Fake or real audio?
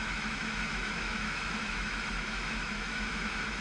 fake